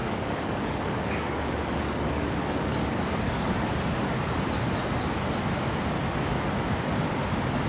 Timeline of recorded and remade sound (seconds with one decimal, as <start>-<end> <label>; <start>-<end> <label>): 0.0-4.3 remade; 4.3-7.7 recorded